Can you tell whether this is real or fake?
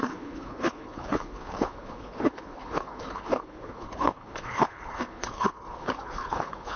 fake